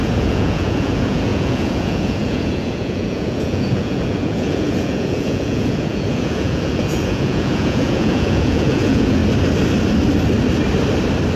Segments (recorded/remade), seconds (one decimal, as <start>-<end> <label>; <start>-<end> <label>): 0.0-9.2 remade; 9.2-11.4 recorded

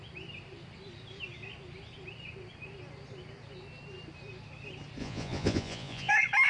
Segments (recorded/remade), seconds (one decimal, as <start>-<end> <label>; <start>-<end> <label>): 0.0-5.0 recorded; 5.0-6.1 remade; 6.1-6.5 recorded